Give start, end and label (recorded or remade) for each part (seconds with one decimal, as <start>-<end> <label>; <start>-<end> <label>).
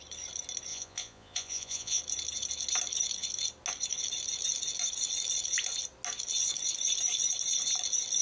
0.0-0.7 recorded; 0.7-2.0 remade; 2.0-8.2 recorded